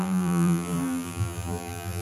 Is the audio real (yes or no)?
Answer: no